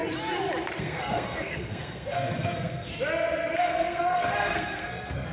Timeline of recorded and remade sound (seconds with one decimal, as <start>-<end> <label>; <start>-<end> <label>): 0.0-0.8 recorded; 0.8-2.9 remade; 2.9-3.6 recorded; 3.6-5.3 remade